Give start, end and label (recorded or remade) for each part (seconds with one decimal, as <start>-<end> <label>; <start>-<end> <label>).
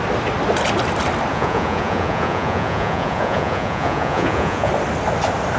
0.0-1.3 recorded; 1.3-4.7 remade; 4.7-5.6 recorded